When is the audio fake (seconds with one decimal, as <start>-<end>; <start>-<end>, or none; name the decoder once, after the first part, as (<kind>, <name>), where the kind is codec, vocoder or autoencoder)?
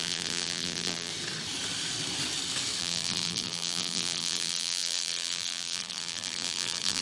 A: 0.0-1.1 (vocoder, BigVGAN v2); 2.8-7.0